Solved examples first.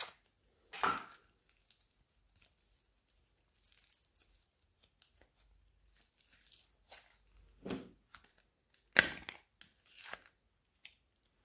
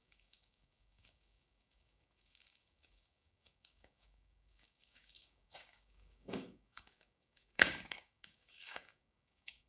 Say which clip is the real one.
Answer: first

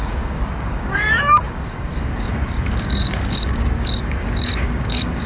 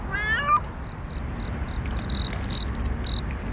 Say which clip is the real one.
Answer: second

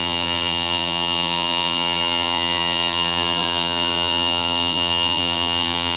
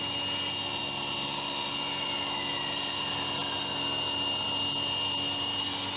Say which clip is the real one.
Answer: second